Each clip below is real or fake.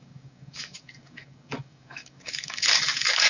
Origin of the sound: fake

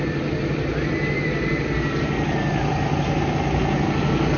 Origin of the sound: real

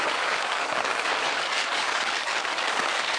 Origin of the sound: fake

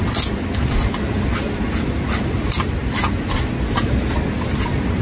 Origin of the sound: real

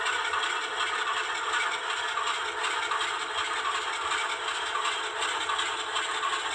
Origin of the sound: real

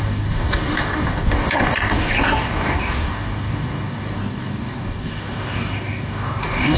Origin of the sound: fake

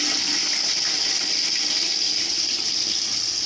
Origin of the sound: real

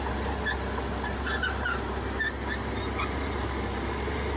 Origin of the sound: real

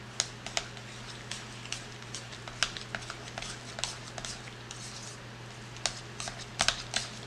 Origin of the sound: real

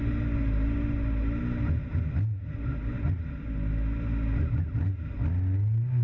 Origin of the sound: real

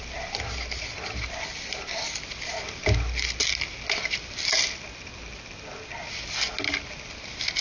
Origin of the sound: real